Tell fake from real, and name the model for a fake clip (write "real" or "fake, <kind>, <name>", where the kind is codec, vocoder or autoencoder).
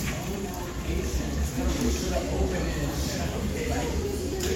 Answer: fake, vocoder, BigVGAN v2